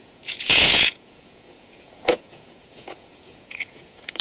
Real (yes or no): no